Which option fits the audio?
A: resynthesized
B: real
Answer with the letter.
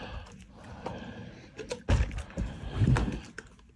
A